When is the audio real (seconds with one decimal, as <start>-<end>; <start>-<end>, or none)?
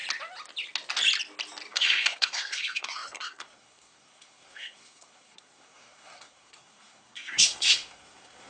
0.0-1.7